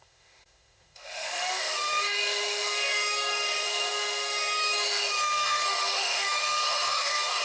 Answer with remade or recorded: remade